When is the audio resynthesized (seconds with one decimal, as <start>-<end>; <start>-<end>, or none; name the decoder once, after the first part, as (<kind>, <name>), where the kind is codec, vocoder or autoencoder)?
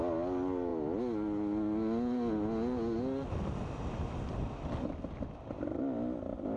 none